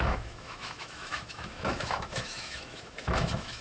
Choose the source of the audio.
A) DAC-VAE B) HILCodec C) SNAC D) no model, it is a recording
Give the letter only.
A